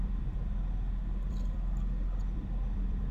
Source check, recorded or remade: remade